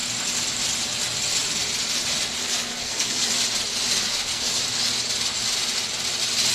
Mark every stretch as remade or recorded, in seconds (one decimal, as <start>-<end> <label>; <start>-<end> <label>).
0.0-2.4 recorded; 2.4-3.3 remade; 3.3-4.1 recorded; 4.1-4.6 remade; 4.6-6.5 recorded